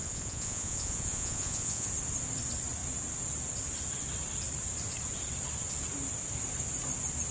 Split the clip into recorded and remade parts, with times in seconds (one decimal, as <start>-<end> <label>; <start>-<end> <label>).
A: 0.0-1.9 remade; 1.9-7.3 recorded